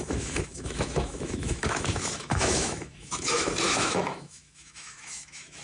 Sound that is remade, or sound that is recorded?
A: remade